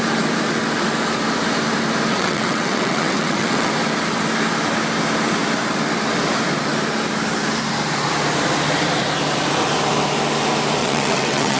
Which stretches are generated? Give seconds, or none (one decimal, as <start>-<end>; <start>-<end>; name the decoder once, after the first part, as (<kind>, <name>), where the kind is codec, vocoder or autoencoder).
2.1-3.7 (vocoder, WaveNeXt); 10.8-11.6